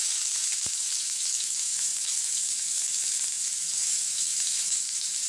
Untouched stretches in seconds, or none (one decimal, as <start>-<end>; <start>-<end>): none

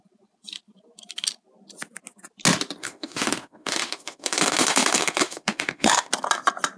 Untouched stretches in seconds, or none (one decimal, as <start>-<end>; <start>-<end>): 0.0-2.8; 6.1-6.8

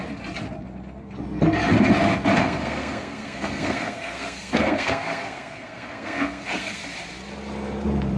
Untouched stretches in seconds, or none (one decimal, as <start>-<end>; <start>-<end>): 0.0-2.4; 6.8-8.2

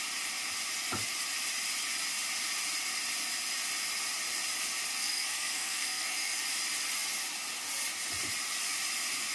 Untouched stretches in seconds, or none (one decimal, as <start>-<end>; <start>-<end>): 0.0-5.0; 6.4-9.3

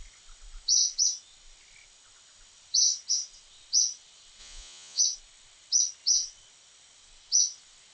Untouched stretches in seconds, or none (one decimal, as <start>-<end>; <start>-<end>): 0.0-4.4; 5.0-7.9

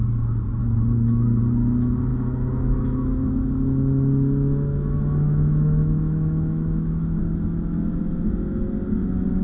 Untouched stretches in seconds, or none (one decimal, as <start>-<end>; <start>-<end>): 0.0-2.1; 7.2-9.4